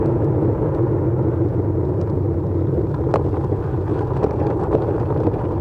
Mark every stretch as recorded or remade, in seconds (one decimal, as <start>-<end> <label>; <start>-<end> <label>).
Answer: 0.0-3.9 recorded; 3.9-4.6 remade; 4.6-5.6 recorded